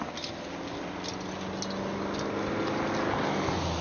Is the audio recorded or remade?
recorded